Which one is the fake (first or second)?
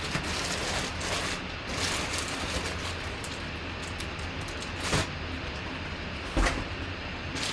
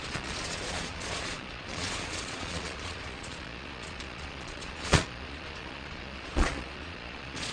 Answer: second